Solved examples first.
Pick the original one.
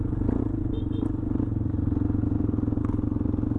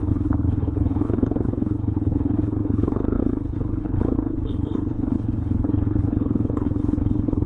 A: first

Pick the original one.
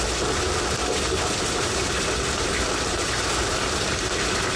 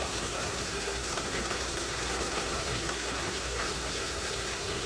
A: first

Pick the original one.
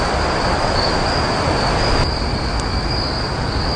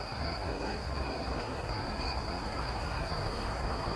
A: first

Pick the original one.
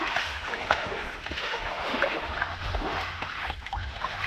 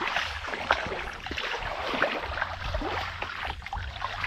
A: second